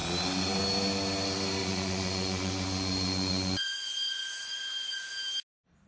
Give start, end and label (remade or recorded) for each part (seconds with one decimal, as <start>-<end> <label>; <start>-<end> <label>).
0.0-1.6 recorded; 1.6-5.1 remade; 5.1-5.9 recorded